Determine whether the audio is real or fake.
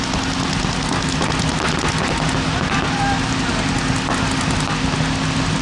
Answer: real